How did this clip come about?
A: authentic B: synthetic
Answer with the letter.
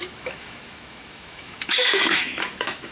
B